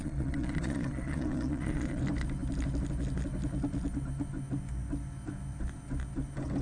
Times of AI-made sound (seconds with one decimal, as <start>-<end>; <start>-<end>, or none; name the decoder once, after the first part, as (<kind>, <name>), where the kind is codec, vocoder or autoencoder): 0.0-2.0 (vocoder, Vocos)